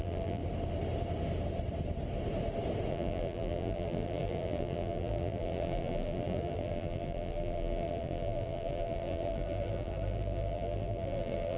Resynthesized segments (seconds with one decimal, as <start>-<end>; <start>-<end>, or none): 0.0-0.4; 2.9-11.6